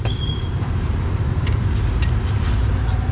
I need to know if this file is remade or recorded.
remade